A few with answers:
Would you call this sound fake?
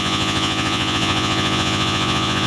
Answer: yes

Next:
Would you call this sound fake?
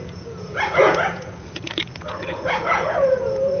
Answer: yes